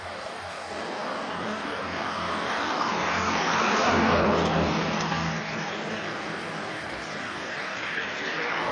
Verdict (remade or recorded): remade